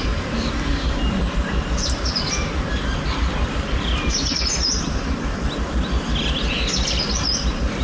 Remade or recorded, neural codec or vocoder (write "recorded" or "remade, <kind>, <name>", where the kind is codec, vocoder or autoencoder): remade, vocoder, BigVGAN v2